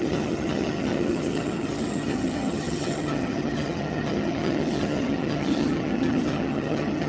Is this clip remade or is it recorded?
remade